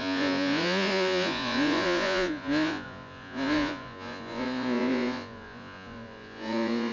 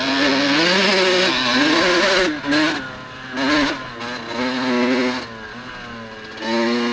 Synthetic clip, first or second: first